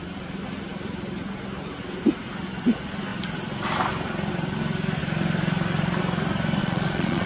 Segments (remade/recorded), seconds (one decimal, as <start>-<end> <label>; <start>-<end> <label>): 0.0-6.6 recorded; 6.6-7.3 remade